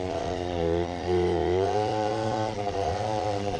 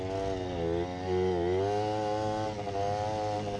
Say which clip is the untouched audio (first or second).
second